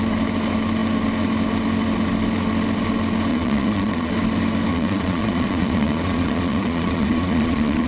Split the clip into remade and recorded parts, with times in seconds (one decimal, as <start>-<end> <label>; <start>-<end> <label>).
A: 0.0-3.3 recorded; 3.3-4.1 remade; 4.1-4.7 recorded; 4.7-7.9 remade